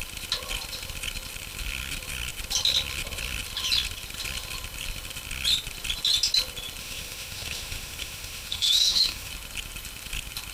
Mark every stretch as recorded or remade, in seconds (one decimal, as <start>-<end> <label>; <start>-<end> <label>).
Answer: 0.0-6.8 recorded; 6.8-9.3 remade; 9.3-10.5 recorded